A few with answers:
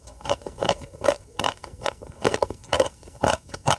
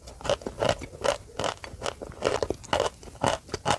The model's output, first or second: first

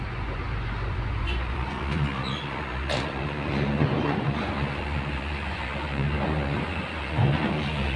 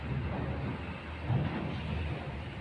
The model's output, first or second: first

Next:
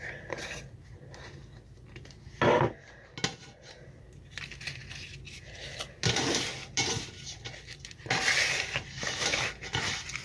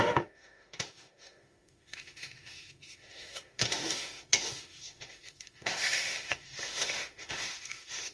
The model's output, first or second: second